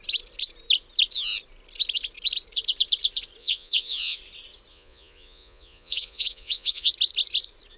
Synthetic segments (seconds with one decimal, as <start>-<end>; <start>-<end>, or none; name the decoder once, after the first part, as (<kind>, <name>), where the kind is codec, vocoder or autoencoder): 3.4-4.2 (vocoder, Vocos); 4.7-6.9